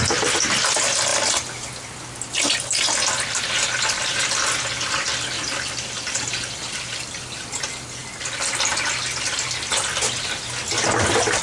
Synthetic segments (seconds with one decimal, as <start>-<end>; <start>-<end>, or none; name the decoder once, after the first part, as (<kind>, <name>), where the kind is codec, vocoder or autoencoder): none